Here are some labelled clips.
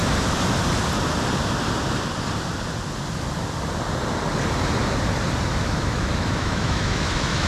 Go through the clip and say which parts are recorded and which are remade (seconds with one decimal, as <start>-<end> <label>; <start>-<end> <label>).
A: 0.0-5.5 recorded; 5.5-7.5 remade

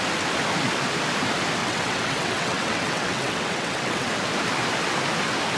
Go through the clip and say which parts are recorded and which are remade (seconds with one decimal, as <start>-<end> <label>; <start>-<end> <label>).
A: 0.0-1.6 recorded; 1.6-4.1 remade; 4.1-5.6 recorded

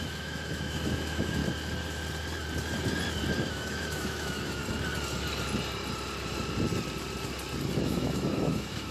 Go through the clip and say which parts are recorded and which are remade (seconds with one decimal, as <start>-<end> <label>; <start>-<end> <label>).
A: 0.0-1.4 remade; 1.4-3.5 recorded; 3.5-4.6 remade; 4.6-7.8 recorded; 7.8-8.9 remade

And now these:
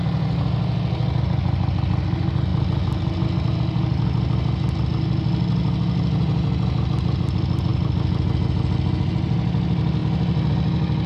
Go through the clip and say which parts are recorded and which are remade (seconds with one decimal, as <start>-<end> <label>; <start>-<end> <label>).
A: 0.0-11.1 recorded